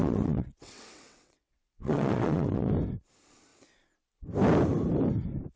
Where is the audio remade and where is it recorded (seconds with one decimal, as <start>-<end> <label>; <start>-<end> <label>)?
0.0-2.7 remade; 2.7-5.6 recorded